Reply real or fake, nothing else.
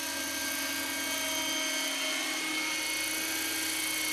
real